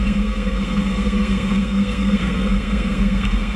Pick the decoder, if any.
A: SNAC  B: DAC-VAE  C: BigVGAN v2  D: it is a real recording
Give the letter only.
A